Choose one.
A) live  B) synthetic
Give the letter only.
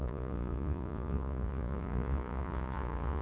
B